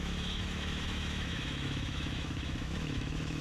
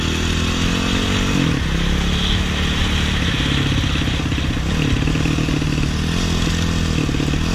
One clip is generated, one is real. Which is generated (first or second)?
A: first